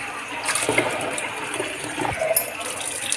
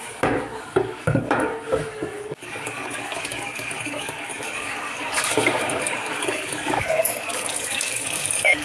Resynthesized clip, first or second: second